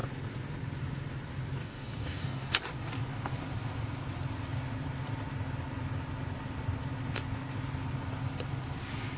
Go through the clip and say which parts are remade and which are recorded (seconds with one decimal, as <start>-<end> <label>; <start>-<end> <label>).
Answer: 0.0-1.6 recorded; 1.6-2.5 remade; 2.5-9.2 recorded